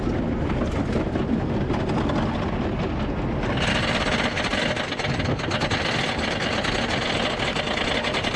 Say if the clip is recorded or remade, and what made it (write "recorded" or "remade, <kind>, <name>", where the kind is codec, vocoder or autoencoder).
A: recorded